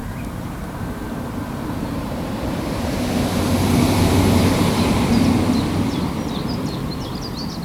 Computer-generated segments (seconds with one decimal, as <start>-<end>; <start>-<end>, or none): 0.0-3.1